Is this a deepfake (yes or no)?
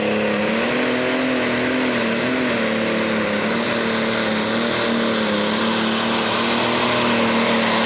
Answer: no